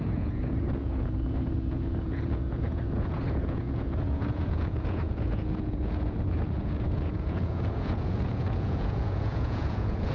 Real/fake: fake